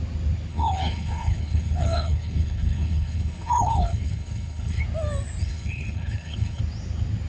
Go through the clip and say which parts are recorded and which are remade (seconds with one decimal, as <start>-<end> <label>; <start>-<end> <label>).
0.0-0.5 recorded; 0.5-4.8 remade; 4.8-5.4 recorded; 5.4-6.6 remade; 6.6-7.3 recorded